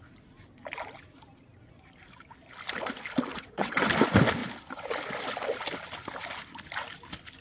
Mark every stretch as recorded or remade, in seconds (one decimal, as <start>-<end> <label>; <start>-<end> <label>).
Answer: 0.0-3.3 recorded; 3.3-3.9 remade; 3.9-7.4 recorded